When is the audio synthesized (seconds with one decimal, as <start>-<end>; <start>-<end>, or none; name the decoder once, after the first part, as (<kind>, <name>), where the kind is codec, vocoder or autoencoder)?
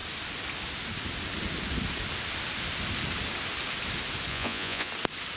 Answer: 4.3-4.9 (vocoder, Vocos)